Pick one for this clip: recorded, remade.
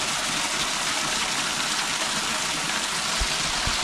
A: recorded